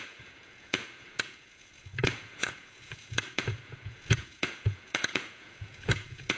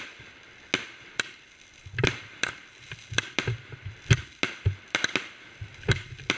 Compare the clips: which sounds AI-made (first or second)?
first